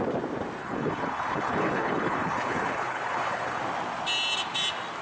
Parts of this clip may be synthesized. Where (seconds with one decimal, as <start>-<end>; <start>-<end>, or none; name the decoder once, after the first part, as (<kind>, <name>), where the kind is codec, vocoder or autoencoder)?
0.6-3.6 (codec, HILCodec)